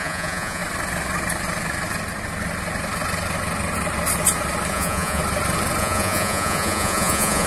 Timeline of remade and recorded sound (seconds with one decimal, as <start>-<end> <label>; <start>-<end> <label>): 0.0-0.6 remade; 0.6-4.7 recorded; 4.7-5.2 remade; 5.2-5.8 recorded; 5.8-7.5 remade